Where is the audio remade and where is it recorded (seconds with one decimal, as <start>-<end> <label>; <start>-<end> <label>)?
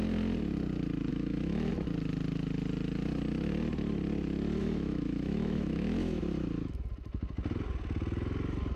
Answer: 0.0-1.1 recorded; 1.1-1.7 remade; 1.7-4.6 recorded; 4.6-6.2 remade; 6.2-8.8 recorded